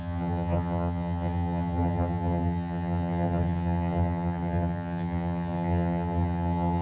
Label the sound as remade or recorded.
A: remade